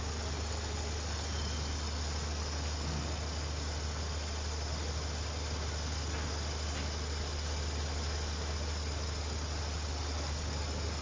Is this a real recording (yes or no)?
yes